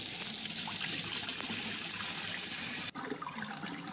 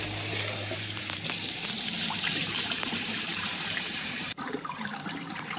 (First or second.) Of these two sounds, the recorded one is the first